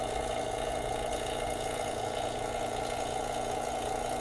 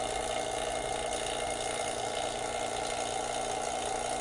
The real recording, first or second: second